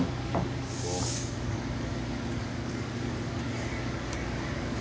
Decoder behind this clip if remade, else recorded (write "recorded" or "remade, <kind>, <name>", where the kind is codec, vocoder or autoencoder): remade, codec, DAC